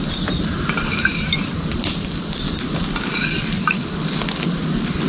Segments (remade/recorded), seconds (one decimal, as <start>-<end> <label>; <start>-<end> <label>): 0.0-1.5 recorded; 1.5-4.6 remade; 4.6-5.1 recorded